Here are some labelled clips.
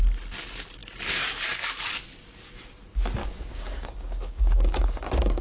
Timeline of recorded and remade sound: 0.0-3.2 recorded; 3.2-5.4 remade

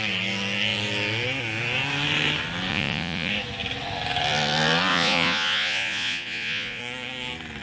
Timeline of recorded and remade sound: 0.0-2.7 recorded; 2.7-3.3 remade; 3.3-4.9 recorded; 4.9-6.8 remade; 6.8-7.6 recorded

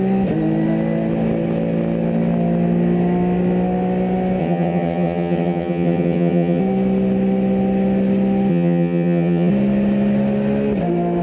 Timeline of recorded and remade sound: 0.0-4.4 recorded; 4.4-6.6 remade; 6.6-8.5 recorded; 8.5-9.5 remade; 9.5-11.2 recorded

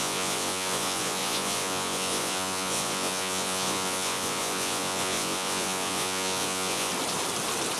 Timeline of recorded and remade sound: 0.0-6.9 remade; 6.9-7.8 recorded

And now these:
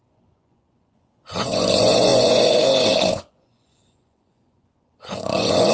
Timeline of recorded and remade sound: 0.0-5.7 remade